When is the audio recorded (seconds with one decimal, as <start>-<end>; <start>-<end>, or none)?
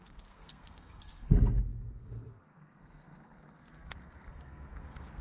none